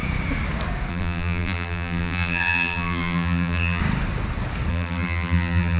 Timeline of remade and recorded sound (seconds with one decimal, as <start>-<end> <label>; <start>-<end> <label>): 0.0-0.9 recorded; 0.9-3.8 remade; 3.8-4.7 recorded; 4.7-5.8 remade